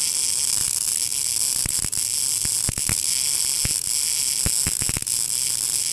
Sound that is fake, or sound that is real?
real